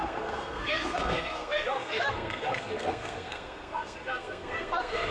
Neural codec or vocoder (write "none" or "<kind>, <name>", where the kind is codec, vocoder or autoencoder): codec, SNAC